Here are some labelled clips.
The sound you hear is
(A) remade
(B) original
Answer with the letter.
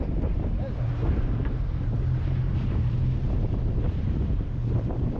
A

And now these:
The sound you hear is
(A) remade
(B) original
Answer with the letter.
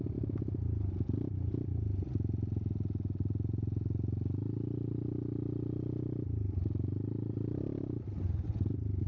B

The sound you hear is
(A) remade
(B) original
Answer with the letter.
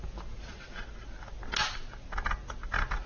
B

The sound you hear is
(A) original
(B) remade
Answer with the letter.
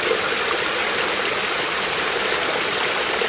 A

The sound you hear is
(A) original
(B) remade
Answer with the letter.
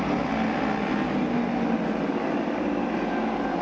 A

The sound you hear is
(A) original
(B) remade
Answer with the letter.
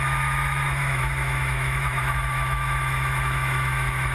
B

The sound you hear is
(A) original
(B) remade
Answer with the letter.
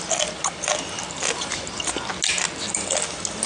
A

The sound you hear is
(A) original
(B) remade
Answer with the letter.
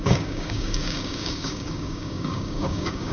B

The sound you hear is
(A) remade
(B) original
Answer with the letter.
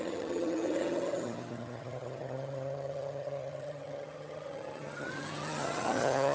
A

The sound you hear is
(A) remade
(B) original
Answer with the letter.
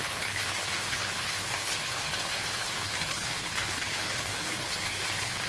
A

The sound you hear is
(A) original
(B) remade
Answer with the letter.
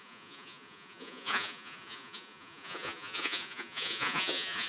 B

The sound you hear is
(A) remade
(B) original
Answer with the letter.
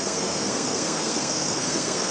A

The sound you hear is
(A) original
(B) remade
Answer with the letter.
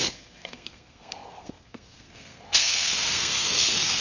B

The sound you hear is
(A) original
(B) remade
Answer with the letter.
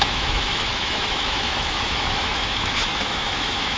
B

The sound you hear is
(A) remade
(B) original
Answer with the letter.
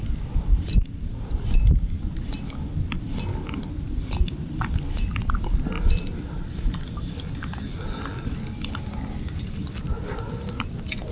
B